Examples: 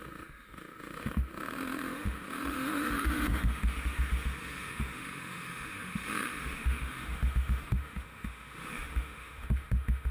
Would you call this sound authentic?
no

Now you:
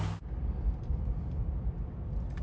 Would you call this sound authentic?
yes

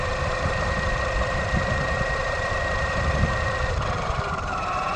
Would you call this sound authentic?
no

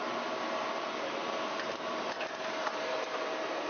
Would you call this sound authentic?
no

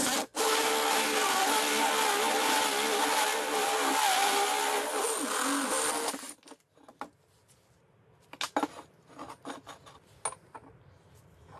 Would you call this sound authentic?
yes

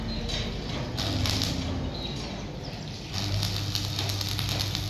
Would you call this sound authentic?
yes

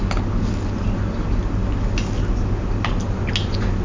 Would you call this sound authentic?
yes